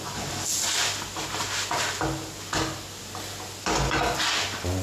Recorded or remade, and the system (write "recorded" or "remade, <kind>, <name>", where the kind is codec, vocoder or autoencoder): recorded